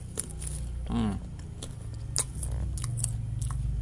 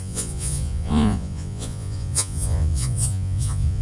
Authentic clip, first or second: first